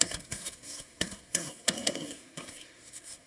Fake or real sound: fake